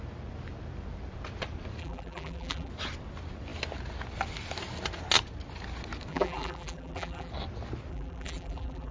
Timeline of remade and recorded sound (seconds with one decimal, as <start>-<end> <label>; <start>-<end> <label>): 0.0-1.8 recorded; 1.8-2.7 remade; 2.7-6.1 recorded; 6.1-7.3 remade; 7.3-7.9 recorded; 7.9-8.9 remade